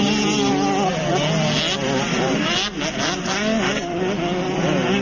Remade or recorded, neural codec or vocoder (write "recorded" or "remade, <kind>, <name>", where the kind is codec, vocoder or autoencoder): recorded